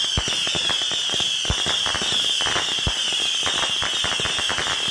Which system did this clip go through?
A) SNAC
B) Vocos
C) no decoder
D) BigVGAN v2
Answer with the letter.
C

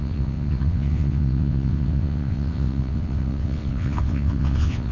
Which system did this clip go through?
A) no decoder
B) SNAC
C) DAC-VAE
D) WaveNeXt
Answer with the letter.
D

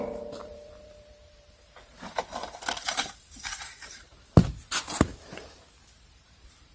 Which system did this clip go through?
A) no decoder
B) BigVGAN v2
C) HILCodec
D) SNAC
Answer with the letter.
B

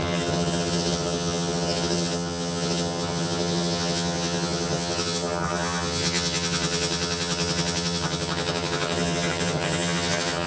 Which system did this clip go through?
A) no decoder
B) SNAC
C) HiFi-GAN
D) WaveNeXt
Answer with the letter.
C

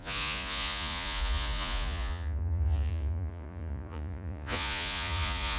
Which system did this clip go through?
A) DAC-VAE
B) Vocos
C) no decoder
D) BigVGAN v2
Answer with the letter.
B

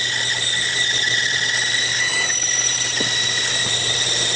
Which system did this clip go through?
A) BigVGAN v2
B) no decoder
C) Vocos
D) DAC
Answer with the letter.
B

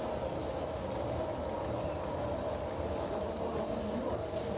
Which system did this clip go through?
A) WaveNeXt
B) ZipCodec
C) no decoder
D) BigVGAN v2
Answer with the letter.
C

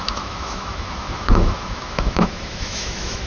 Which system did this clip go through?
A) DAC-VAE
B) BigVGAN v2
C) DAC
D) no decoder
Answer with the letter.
A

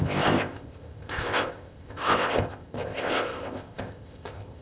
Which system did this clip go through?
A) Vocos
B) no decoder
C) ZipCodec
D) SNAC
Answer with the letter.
C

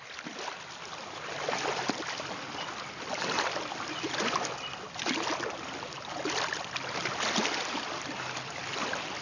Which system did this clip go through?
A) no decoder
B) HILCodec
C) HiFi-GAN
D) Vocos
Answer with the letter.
A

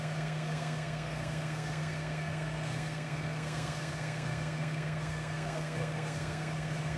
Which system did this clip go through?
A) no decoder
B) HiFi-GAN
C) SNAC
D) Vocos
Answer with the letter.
C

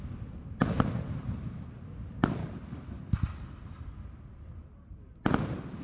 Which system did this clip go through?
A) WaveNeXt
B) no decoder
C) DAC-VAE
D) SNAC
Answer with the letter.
B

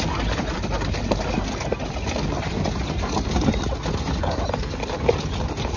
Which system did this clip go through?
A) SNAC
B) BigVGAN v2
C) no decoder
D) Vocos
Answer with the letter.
C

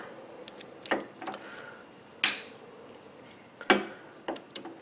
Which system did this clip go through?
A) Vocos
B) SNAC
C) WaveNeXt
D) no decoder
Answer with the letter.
D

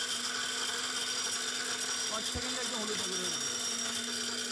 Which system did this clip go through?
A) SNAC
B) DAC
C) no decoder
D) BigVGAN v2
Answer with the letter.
C